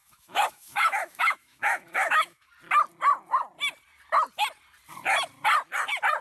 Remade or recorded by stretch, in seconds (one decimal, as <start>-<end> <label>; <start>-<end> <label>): 0.0-2.5 remade; 2.5-6.2 recorded